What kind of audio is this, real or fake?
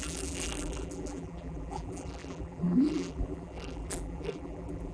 fake